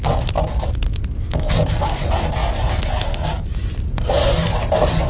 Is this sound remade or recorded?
recorded